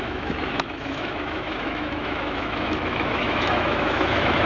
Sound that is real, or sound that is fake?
fake